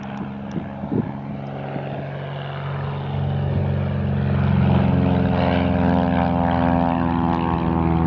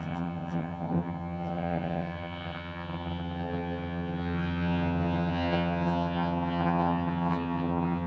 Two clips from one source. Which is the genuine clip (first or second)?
first